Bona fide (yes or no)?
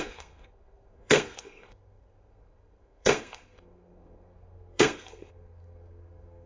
no